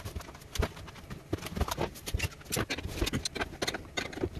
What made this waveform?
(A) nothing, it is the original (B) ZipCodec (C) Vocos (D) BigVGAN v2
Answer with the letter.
A